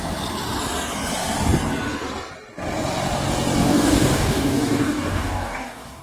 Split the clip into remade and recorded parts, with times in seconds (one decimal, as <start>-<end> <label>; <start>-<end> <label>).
0.0-3.6 recorded; 3.6-6.0 remade